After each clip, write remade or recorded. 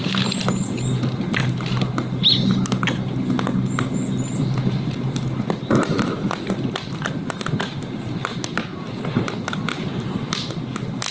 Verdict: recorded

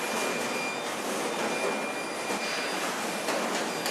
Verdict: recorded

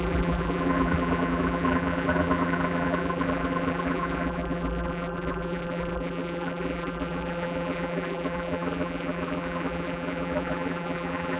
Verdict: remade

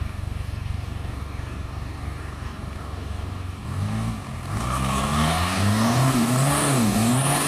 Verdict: remade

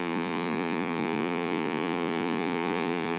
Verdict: remade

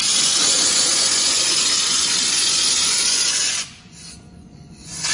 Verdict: remade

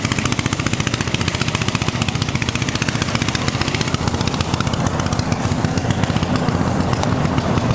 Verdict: recorded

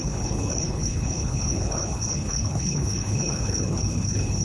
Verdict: remade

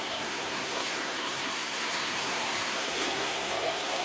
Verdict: remade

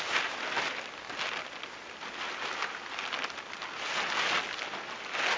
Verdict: recorded